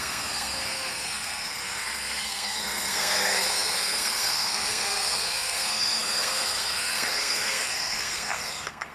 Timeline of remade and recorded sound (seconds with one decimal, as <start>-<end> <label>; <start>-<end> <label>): 0.0-8.9 remade